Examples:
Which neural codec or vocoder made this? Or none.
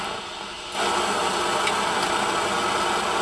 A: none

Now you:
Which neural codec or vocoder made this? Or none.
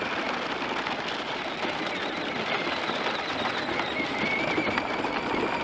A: none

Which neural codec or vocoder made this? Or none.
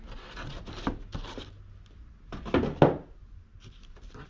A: none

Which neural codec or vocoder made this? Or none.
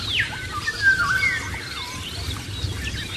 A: none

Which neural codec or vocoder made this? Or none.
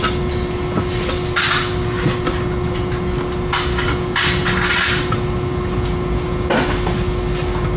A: none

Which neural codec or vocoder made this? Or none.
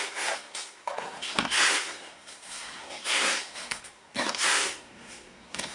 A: codec, SNAC